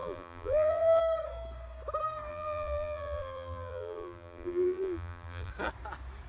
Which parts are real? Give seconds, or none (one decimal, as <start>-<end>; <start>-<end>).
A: 1.0-2.3; 5.5-6.3